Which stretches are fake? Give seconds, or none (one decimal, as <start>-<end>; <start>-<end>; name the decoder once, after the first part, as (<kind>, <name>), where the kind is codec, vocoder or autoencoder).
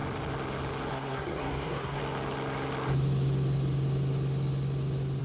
0.9-2.0 (codec, SNAC)